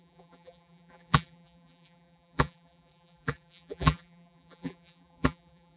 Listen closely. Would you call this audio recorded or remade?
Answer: remade